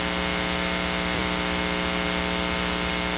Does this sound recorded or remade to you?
recorded